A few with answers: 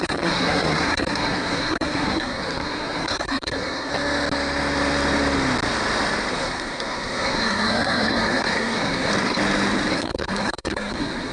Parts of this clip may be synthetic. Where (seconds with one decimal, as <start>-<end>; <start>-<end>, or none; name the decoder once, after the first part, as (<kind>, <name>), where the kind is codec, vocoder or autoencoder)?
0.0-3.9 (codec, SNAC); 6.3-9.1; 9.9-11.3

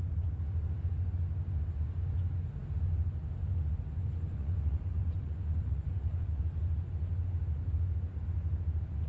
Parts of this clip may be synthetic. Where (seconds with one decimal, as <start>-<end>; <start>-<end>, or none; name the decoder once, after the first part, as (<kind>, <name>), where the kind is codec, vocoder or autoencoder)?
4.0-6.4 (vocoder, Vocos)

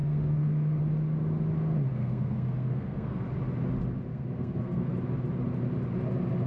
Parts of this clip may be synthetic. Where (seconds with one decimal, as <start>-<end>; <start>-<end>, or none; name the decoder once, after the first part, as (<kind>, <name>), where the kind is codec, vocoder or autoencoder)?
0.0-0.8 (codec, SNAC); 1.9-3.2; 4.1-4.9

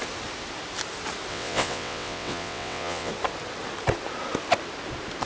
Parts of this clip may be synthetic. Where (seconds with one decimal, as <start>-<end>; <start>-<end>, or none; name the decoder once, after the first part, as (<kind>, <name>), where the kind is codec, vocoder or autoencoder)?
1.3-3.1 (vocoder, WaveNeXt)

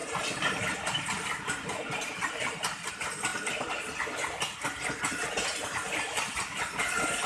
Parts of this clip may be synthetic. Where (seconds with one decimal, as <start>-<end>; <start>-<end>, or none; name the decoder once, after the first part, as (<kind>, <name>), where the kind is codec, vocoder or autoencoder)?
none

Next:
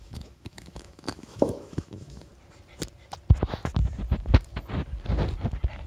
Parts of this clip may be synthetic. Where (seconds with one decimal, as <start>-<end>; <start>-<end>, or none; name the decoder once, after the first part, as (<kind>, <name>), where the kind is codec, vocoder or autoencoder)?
0.0-2.3 (autoencoder, DAC-VAE)